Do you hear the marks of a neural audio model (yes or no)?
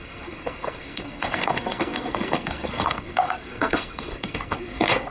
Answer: yes